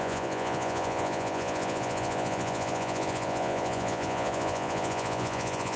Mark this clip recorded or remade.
remade